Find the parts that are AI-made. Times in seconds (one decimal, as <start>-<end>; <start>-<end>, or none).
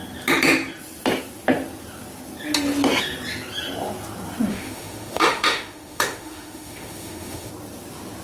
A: 4.5-7.5